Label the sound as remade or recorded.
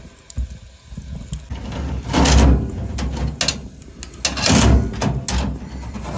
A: recorded